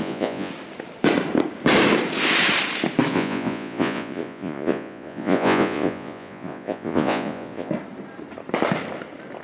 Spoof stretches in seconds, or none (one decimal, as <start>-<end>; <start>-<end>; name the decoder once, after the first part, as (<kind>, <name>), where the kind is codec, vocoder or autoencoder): 0.0-0.5 (vocoder, Vocos); 3.1-7.7